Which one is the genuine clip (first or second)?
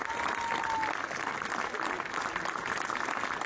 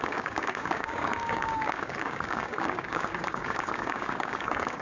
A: first